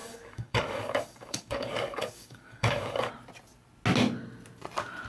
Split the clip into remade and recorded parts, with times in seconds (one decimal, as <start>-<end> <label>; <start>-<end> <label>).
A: 0.0-3.1 remade; 3.1-5.1 recorded

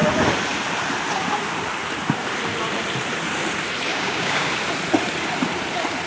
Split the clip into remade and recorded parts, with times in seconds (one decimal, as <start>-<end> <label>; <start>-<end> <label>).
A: 0.0-3.9 recorded; 3.9-4.5 remade; 4.5-6.1 recorded

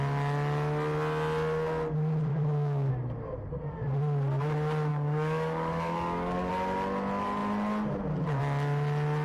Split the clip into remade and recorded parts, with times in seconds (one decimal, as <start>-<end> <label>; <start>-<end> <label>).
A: 0.0-2.3 recorded; 2.3-2.9 remade; 2.9-4.9 recorded; 4.9-6.5 remade; 6.5-9.2 recorded